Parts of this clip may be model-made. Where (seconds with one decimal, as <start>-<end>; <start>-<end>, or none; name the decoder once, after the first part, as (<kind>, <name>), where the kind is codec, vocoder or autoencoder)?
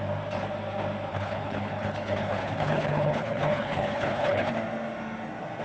1.1-4.5 (codec, HILCodec)